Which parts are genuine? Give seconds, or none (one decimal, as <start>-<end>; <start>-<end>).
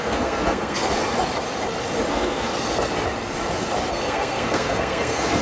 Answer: 1.0-2.1; 2.5-3.9